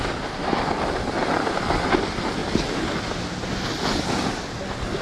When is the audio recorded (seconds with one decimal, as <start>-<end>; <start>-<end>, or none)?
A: 0.0-5.0